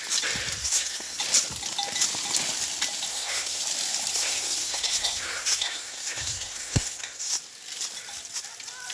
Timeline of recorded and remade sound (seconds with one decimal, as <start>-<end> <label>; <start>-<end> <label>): 0.0-0.6 recorded; 0.6-1.2 remade; 1.2-3.1 recorded; 3.1-3.6 remade; 3.6-4.1 recorded; 4.1-7.4 remade; 7.4-8.9 recorded